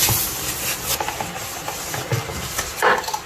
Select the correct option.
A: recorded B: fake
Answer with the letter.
A